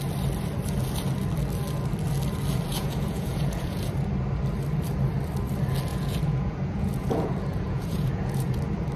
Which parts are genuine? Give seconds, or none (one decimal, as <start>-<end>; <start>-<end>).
0.0-2.7; 3.9-5.9; 8.6-9.0